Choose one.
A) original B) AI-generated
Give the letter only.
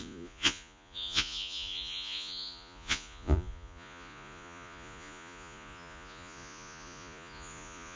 B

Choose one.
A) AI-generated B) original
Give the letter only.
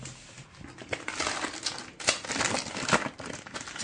B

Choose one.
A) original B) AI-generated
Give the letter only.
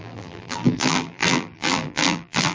B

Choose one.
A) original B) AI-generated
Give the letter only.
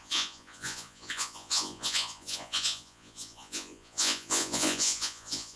B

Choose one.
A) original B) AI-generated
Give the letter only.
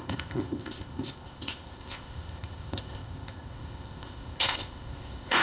B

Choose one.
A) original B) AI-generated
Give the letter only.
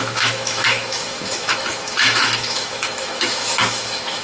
B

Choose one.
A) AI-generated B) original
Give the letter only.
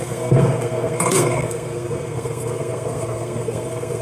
A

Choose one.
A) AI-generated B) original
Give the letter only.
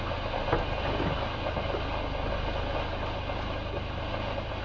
B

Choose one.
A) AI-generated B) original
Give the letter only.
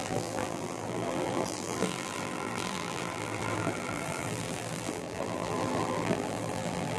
A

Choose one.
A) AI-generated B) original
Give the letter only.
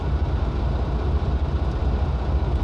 B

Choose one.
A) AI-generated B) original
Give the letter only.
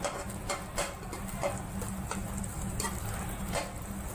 B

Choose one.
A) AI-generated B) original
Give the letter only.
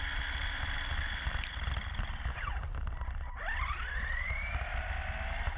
B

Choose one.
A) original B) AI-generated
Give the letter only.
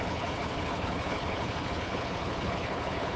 B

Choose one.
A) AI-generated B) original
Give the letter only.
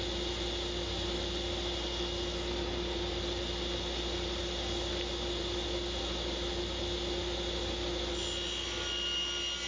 B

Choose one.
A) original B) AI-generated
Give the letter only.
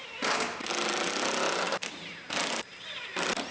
A